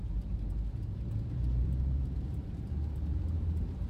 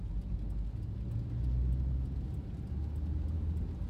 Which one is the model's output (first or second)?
first